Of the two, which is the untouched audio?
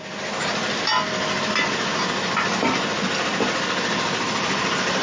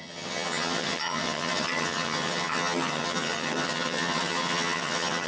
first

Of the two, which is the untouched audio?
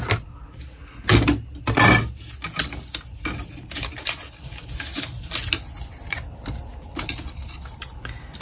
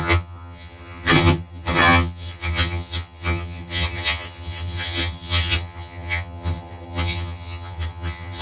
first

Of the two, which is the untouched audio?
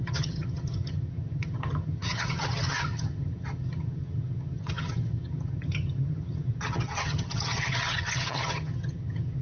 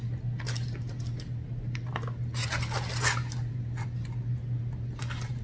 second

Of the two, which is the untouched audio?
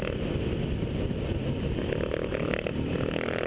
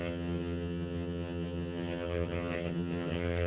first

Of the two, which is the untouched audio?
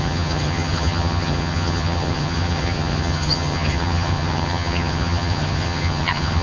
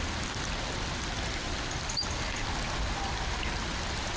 second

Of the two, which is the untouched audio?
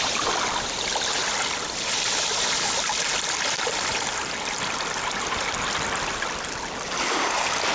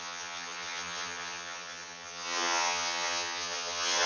first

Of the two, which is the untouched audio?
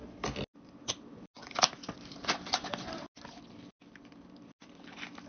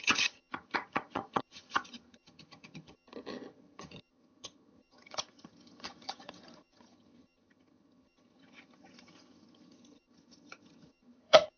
first